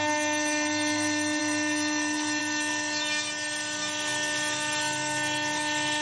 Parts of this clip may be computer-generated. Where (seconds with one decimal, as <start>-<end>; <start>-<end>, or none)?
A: none